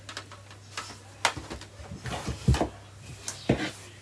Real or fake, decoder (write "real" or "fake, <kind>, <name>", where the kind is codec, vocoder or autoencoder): real